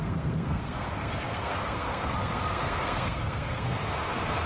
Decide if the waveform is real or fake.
fake